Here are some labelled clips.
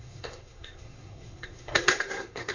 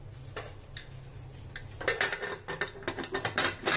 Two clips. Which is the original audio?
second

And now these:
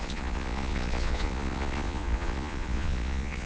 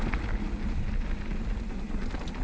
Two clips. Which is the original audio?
second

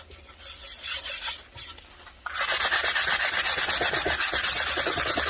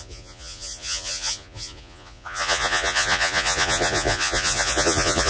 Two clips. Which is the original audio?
first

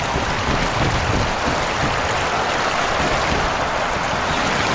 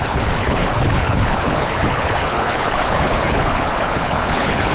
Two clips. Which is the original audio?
first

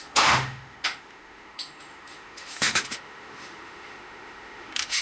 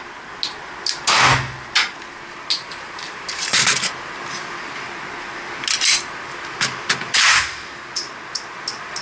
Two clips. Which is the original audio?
second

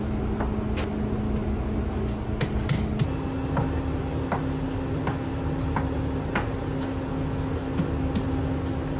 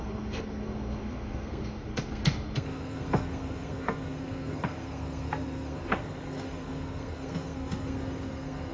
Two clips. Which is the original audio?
first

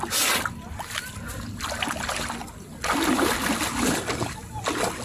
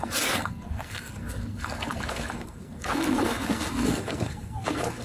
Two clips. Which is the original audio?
first